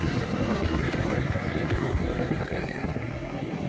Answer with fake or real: fake